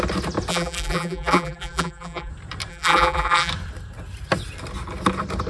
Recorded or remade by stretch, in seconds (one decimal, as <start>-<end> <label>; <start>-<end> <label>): 0.0-0.5 recorded; 0.5-2.3 remade; 2.3-2.7 recorded; 2.7-3.5 remade; 3.5-5.5 recorded